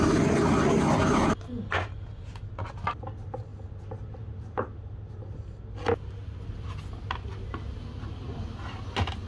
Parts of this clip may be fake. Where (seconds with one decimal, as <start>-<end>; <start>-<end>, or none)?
none